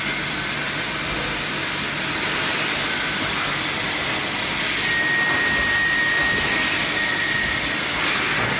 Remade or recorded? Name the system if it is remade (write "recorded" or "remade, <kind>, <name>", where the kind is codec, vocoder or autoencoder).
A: recorded